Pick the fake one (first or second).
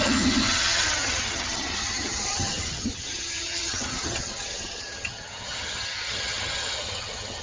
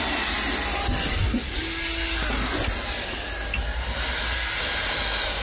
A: first